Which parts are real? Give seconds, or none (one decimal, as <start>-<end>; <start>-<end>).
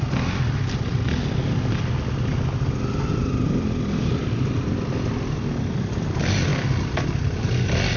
0.0-8.0